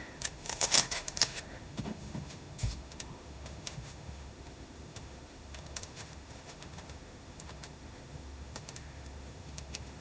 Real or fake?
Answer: fake